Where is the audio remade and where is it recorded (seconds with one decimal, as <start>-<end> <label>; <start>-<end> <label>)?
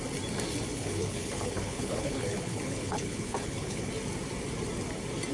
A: 0.0-0.7 recorded; 0.7-3.9 remade; 3.9-5.3 recorded